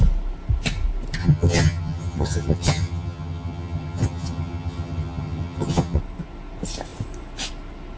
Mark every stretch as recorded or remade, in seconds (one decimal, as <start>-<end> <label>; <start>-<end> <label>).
0.0-1.2 recorded; 1.2-6.0 remade; 6.0-8.0 recorded